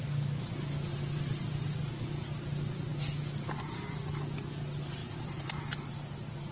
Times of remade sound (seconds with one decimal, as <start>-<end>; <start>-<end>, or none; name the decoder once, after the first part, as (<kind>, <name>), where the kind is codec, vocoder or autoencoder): 0.9-1.8 (vocoder, BigVGAN v2); 5.0-5.6